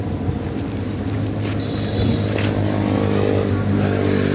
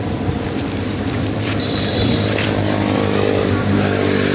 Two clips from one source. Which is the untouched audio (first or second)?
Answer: first